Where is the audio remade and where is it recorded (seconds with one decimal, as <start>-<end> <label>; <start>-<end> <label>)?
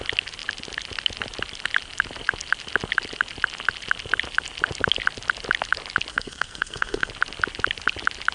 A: 0.0-6.1 recorded; 6.1-7.1 remade; 7.1-8.3 recorded